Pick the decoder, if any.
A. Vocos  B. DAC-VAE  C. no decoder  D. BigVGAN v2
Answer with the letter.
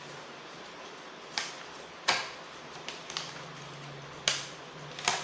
C